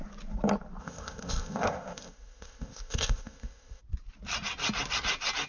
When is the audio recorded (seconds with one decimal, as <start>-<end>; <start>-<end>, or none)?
0.0-0.8; 3.8-5.5